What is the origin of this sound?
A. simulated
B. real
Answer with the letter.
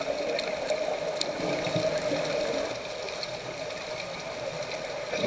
B